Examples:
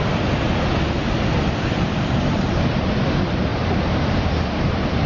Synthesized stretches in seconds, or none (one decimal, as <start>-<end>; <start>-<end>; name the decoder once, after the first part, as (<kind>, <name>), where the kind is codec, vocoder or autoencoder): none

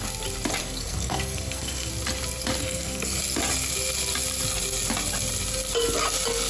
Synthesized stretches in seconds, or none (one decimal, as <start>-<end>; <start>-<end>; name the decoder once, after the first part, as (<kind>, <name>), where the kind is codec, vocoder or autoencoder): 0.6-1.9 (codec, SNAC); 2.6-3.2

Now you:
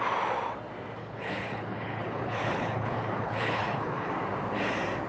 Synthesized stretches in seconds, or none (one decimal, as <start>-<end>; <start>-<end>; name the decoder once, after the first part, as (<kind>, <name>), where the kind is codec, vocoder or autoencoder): 1.0-4.1 (codec, HILCodec)

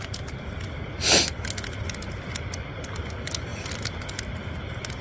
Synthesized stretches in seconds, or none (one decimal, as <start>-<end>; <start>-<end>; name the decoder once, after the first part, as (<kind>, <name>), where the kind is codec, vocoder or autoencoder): none

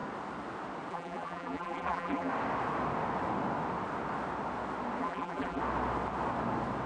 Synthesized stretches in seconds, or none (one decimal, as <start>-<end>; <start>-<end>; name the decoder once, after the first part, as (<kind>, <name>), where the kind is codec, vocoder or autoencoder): 0.9-2.3 (vocoder, BigVGAN v2); 5.0-5.6

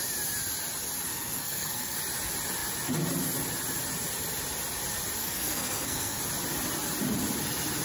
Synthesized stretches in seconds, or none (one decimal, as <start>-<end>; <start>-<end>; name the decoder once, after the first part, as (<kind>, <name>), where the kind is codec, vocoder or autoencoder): 1.1-2.0 (codec, SNAC); 5.2-6.2

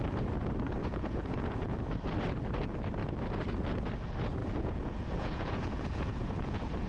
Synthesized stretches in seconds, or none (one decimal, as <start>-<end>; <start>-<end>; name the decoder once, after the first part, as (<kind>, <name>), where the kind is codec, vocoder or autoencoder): 0.8-1.9 (vocoder, Vocos); 4.4-6.9